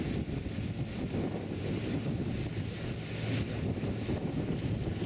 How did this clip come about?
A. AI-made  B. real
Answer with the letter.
B